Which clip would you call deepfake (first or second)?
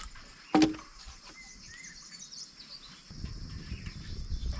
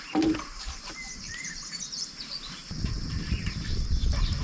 second